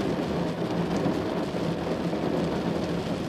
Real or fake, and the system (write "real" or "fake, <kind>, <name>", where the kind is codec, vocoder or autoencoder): real